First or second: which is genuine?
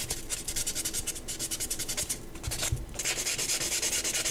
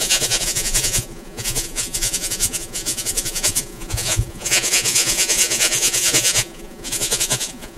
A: first